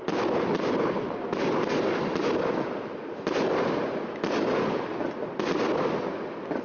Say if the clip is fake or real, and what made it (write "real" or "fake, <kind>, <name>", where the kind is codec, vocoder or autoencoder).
real